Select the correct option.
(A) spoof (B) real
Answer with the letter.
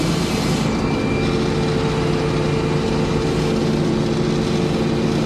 B